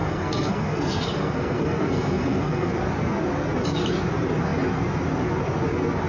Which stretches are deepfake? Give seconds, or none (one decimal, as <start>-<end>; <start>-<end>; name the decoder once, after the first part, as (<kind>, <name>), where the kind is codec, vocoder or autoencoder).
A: 0.0-2.7 (codec, SNAC)